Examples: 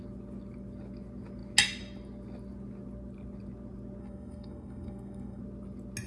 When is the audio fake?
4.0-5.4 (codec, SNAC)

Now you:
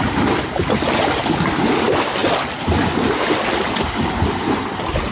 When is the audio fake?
none

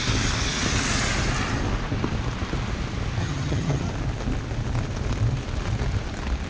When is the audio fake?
3.2-3.9 (vocoder, HiFi-GAN)